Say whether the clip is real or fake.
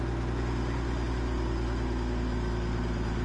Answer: real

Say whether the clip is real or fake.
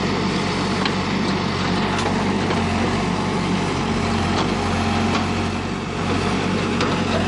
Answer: real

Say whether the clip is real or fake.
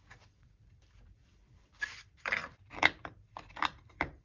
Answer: fake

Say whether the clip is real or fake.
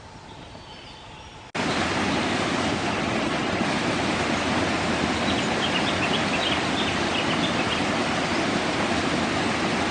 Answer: real